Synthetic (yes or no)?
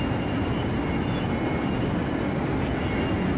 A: no